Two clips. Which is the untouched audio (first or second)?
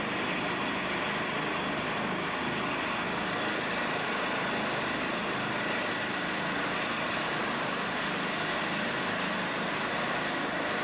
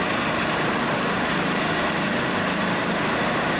first